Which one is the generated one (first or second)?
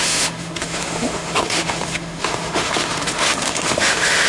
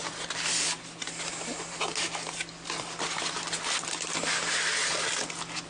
first